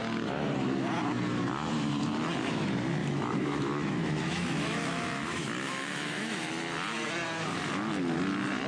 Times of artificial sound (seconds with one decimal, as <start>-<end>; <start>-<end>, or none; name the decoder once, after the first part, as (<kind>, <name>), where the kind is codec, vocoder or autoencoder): 3.0-6.5 (autoencoder, DAC-VAE)